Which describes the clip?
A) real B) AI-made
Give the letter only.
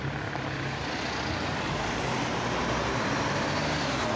B